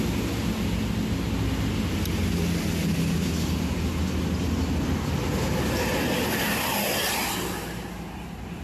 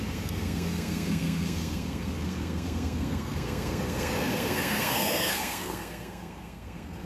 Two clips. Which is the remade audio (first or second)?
second